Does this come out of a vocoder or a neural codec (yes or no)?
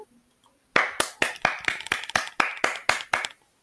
no